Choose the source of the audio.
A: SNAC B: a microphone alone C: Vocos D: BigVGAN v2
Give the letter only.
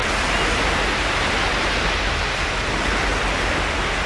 B